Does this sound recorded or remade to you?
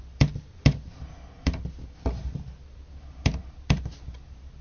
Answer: recorded